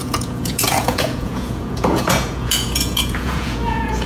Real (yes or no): no